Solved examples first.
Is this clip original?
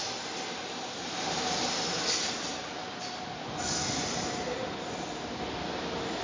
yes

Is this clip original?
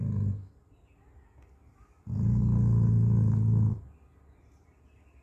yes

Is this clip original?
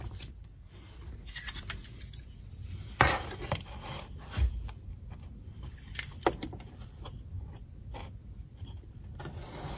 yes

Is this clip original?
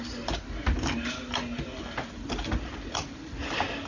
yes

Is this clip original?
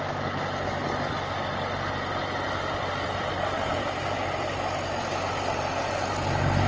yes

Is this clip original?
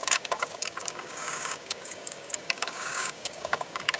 no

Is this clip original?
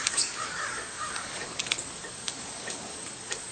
no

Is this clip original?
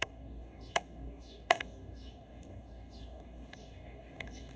no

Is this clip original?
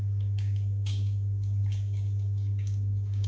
no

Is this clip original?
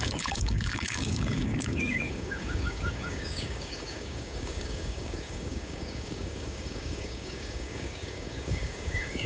no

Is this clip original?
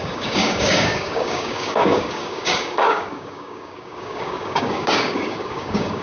no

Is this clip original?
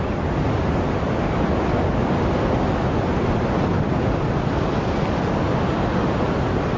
yes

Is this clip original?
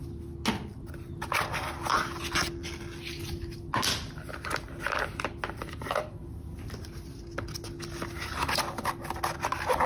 yes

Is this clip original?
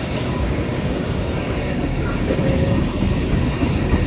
no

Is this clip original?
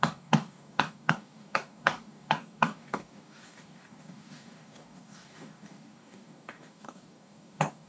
no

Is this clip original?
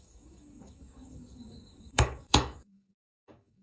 no